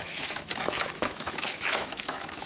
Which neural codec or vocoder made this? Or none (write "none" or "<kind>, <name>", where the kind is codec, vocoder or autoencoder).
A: autoencoder, DAC-VAE